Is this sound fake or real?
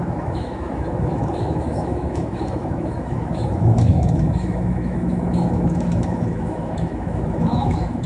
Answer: fake